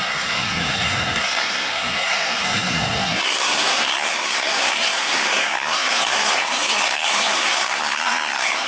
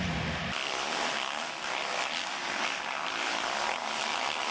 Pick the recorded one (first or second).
second